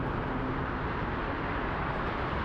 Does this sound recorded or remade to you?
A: remade